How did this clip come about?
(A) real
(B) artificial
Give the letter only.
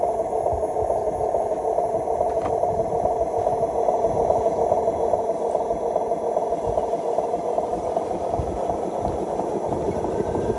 A